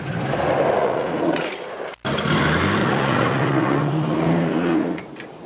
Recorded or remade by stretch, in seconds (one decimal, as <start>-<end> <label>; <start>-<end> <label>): 0.0-0.8 recorded; 0.8-1.5 remade; 1.5-2.8 recorded; 2.8-5.0 remade; 5.0-5.5 recorded